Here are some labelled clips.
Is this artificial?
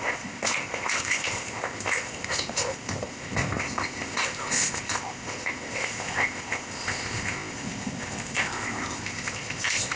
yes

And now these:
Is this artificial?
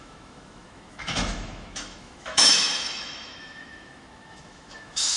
yes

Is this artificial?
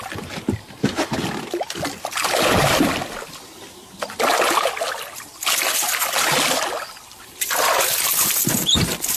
no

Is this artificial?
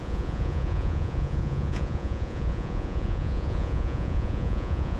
yes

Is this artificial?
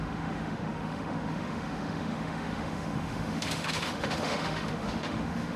yes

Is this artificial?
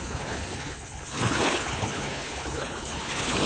yes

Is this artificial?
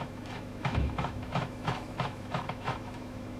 yes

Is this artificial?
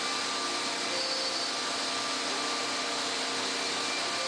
no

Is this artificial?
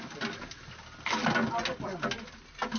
no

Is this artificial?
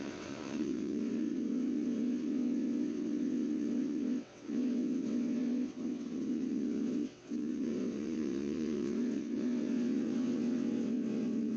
yes